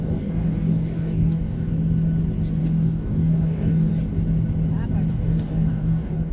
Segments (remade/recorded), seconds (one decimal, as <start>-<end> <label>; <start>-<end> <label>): 0.0-1.7 remade; 1.7-2.6 recorded; 2.6-3.9 remade; 3.9-5.1 recorded; 5.1-6.3 remade